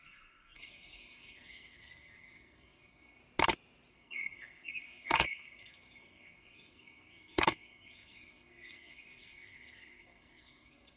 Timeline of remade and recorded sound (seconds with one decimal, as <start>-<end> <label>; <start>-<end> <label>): 0.0-3.2 remade; 3.2-3.9 recorded; 3.9-11.0 remade